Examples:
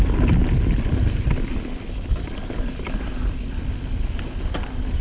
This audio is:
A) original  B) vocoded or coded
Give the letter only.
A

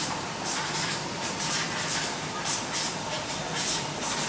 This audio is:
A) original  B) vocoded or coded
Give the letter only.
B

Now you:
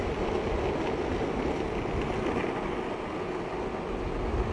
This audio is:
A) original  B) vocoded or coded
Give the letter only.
A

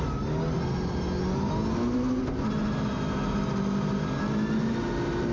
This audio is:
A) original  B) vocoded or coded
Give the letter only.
A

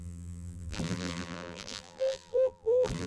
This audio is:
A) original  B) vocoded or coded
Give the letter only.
B